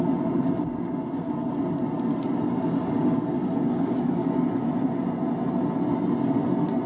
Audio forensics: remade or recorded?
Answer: recorded